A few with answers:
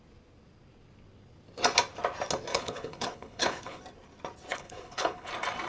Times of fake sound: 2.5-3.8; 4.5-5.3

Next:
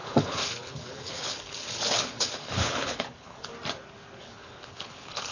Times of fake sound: 0.0-3.5; 4.2-5.3

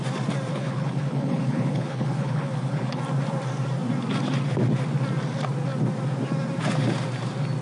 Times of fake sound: 0.5-3.0

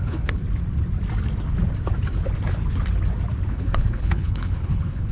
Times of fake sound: 0.0-0.4; 3.5-5.1